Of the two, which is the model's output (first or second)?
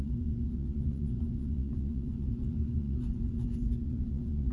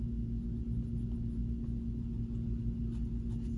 first